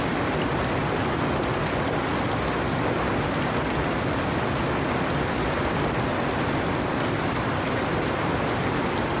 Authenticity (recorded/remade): recorded